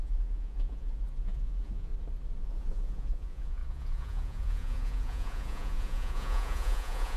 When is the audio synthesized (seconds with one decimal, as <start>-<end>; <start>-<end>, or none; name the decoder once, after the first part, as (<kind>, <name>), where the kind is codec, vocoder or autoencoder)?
0.0-1.9 (vocoder, Vocos); 2.4-7.2